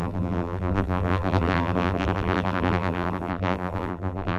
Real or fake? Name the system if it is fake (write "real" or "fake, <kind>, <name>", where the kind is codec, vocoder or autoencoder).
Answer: fake, vocoder, BigVGAN v2